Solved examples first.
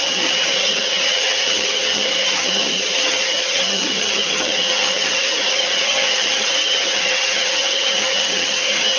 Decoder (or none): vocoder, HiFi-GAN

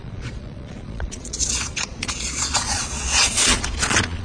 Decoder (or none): vocoder, Vocos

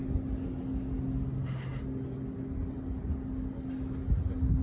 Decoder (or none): none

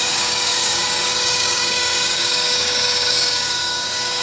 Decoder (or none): codec, DAC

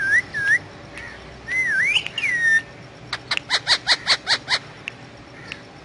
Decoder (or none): none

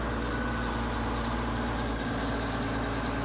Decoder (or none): none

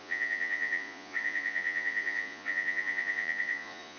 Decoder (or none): vocoder, Vocos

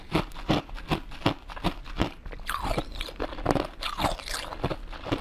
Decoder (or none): none